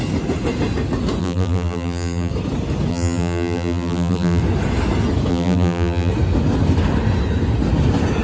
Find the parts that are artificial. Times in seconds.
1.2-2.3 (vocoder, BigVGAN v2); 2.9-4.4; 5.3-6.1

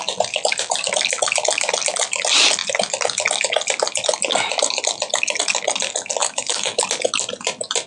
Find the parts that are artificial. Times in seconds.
6.2-6.8 (autoencoder, DAC-VAE)

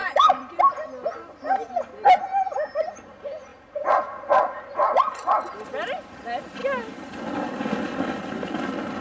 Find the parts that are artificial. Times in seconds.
0.0-0.6 (vocoder, Vocos); 3.5-5.3

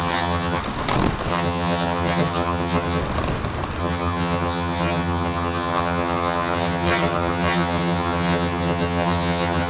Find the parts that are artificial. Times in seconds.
0.0-0.6 (vocoder, HiFi-GAN); 1.3-3.0; 3.8-9.7

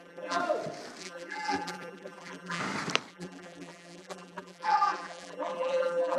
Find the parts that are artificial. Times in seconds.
0.0-0.4 (vocoder, BigVGAN v2); 1.0-2.6; 3.1-6.2

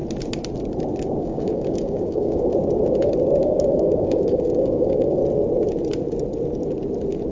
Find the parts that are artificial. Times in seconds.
1.2-2.5 (codec, DAC); 3.4-5.2

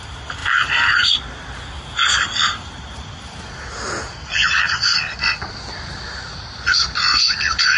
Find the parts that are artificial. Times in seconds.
0.4-1.1 (vocoder, BigVGAN v2)

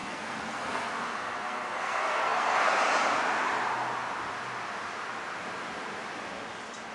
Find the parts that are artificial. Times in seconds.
0.0-2.8 (codec, SNAC)